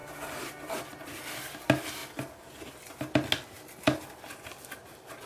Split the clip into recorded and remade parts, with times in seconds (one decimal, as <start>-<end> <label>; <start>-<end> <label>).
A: 0.0-0.7 remade; 0.7-5.3 recorded